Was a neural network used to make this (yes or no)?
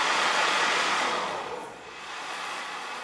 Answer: yes